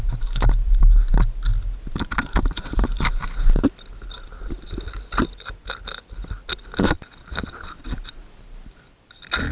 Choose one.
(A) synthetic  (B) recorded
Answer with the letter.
B